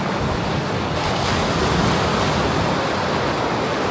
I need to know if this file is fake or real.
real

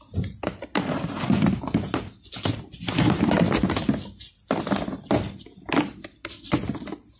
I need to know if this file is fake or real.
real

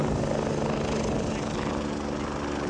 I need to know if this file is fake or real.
real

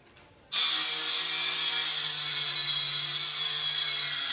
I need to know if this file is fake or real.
real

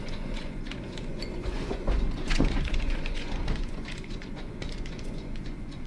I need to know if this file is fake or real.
fake